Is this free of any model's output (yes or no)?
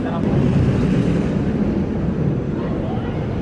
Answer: yes